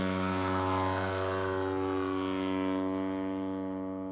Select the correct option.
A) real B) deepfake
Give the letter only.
A